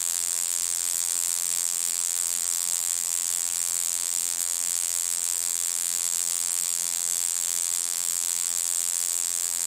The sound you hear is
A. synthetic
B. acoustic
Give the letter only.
A